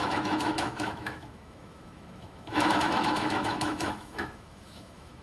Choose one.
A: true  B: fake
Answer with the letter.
B